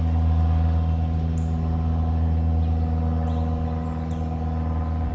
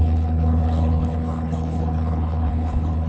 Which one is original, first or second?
first